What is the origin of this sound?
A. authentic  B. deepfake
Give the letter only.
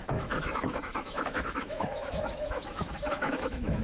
B